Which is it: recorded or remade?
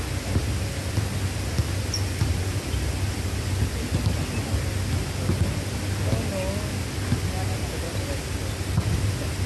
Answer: recorded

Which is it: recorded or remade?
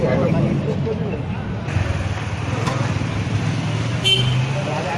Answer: recorded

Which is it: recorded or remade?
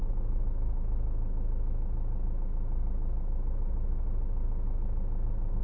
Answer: recorded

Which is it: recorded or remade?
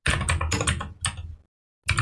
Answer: recorded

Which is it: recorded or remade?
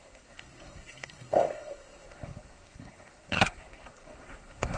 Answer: remade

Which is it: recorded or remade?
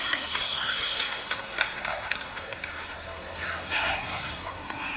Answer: remade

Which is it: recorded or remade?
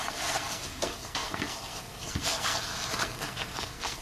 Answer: remade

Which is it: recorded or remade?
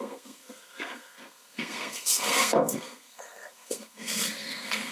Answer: remade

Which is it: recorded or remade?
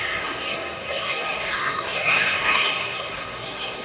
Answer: remade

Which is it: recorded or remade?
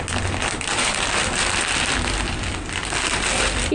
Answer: recorded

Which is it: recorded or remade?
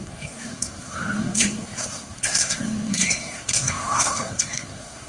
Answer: remade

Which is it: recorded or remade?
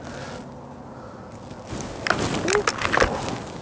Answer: recorded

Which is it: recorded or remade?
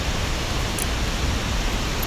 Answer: recorded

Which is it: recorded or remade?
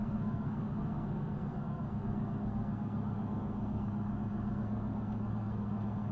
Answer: remade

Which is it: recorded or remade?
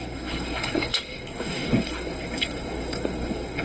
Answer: remade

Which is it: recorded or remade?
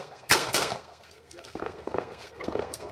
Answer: remade